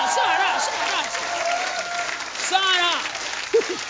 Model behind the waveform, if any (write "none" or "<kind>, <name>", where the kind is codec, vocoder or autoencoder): none